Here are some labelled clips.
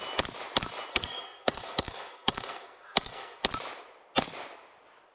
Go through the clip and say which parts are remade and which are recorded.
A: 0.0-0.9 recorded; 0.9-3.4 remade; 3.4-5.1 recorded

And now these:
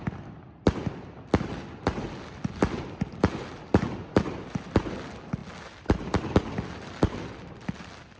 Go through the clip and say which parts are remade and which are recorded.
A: 0.0-8.2 recorded

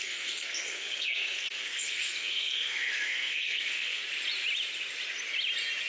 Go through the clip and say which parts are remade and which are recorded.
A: 0.0-4.0 remade; 4.0-5.9 recorded

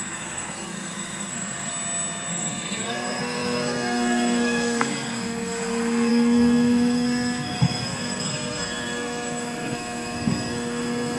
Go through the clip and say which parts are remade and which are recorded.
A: 0.0-1.7 remade; 1.7-2.3 recorded; 2.3-11.2 remade